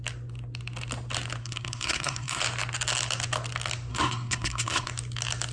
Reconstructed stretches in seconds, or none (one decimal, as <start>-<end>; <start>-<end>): 1.4-2.4; 3.9-4.9